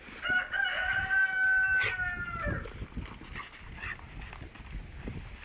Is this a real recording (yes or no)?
yes